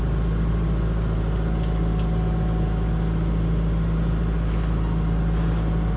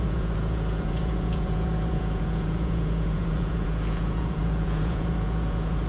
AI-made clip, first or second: second